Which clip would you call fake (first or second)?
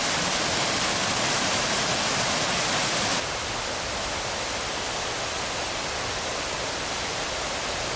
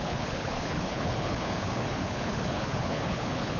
second